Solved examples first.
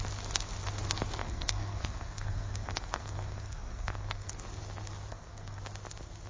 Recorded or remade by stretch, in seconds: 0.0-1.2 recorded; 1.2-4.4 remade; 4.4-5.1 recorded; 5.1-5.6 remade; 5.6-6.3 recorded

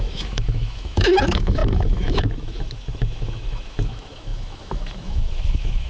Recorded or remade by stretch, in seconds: 0.0-5.9 remade

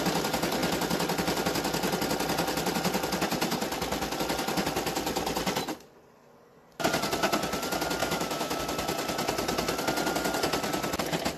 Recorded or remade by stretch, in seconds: 0.0-8.0 recorded; 8.0-8.6 remade; 8.6-11.4 recorded

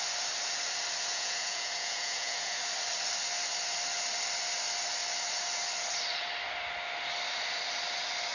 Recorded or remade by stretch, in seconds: 0.0-1.1 recorded; 1.1-2.6 remade; 2.6-8.3 recorded

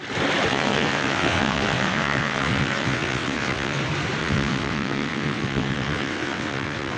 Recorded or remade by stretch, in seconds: 0.0-0.5 recorded; 0.5-3.8 remade; 3.8-4.2 recorded; 4.2-7.0 remade

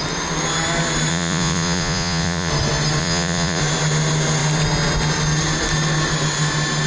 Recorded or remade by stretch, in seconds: 0.0-1.1 recorded; 1.1-2.5 remade; 2.5-3.0 recorded; 3.0-3.6 remade; 3.6-6.9 recorded

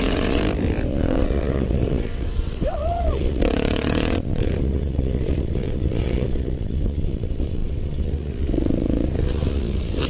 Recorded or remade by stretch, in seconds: 0.0-0.4 remade; 0.4-0.9 recorded; 0.9-10.1 remade

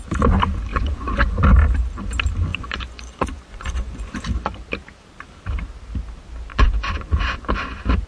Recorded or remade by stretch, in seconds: 0.0-0.7 recorded; 0.7-1.4 remade; 1.4-2.5 recorded; 2.5-4.2 remade; 4.2-6.5 recorded; 6.5-7.5 remade; 7.5-8.1 recorded